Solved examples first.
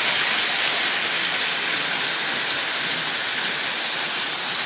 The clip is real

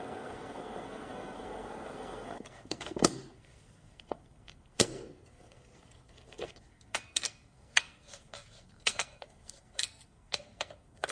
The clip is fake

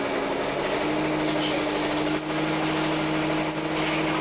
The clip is real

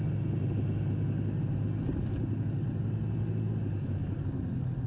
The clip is real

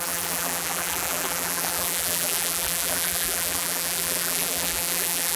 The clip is fake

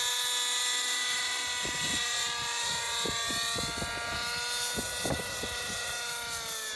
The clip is real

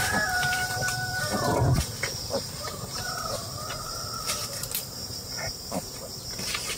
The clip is fake